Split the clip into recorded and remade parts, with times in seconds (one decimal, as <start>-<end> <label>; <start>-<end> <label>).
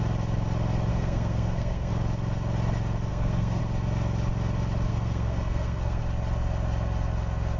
0.0-0.9 recorded; 0.9-1.9 remade; 1.9-3.1 recorded; 3.1-3.6 remade; 3.6-4.9 recorded; 4.9-6.0 remade; 6.0-7.6 recorded